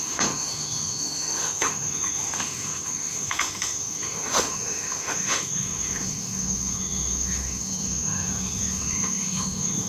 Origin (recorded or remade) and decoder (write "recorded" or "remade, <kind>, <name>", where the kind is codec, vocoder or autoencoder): remade, autoencoder, DAC-VAE